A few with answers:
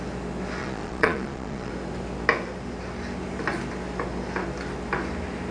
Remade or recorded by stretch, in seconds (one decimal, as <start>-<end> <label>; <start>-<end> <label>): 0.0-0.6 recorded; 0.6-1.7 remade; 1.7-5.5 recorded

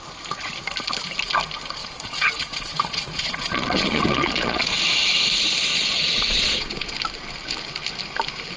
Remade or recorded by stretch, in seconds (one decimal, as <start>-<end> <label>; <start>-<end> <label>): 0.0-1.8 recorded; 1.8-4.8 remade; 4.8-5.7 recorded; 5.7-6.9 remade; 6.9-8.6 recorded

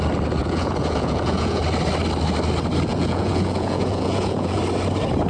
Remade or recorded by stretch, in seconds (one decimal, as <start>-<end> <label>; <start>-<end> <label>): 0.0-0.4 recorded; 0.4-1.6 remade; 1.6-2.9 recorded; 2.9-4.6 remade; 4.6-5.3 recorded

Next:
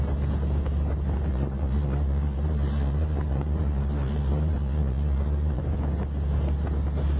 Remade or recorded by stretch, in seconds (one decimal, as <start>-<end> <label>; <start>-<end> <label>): 0.0-1.3 recorded; 1.3-5.6 remade; 5.6-7.2 recorded